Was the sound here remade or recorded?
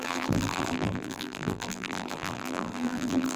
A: remade